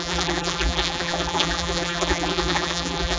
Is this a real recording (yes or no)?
no